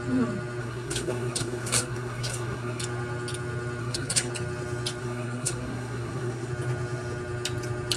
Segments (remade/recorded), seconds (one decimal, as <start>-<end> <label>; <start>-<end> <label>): 0.0-0.6 recorded; 0.6-2.8 remade; 2.8-3.8 recorded; 3.8-4.3 remade; 4.3-5.0 recorded; 5.0-6.5 remade; 6.5-8.0 recorded